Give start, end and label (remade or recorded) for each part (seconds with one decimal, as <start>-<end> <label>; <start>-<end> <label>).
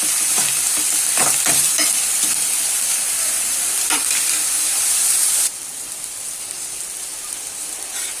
0.0-8.2 remade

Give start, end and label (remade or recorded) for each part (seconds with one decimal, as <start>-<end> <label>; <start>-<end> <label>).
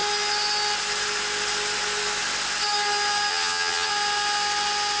0.0-3.3 recorded; 3.3-3.9 remade; 3.9-5.0 recorded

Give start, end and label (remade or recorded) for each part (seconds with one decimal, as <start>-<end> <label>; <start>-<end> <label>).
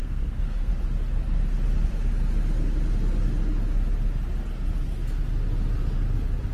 0.0-0.7 remade; 0.7-6.5 recorded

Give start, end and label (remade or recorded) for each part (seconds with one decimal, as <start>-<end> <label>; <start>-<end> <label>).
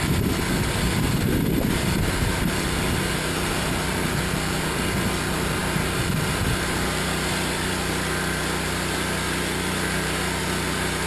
0.0-11.1 recorded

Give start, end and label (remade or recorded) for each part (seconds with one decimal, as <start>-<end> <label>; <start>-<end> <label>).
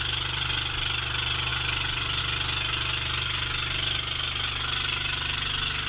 0.0-5.9 recorded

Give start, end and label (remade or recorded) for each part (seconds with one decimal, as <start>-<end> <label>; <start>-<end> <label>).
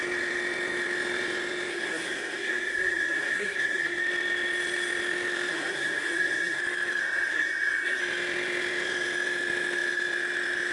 0.0-1.7 recorded; 1.7-4.0 remade; 4.0-5.5 recorded; 5.5-6.6 remade; 6.6-7.0 recorded; 7.0-8.0 remade; 8.0-10.7 recorded